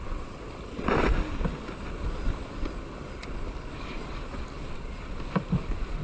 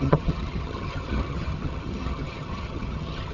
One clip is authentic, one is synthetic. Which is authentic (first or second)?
first